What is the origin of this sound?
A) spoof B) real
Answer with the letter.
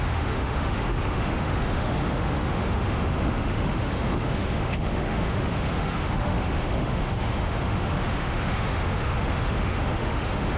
A